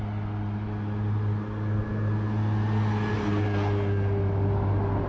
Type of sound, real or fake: real